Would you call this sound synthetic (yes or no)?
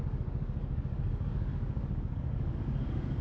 yes